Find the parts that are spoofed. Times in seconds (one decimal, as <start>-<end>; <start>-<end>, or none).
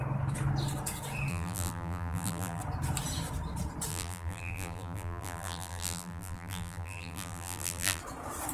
1.3-2.6; 3.9-8.0